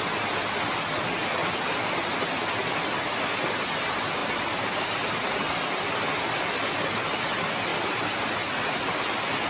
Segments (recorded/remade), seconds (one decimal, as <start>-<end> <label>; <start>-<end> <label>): 0.0-9.5 recorded